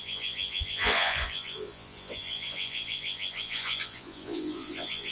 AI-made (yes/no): yes